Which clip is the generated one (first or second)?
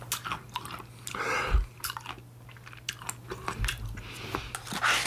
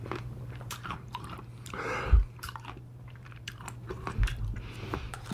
second